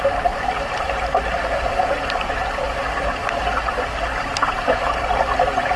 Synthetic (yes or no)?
no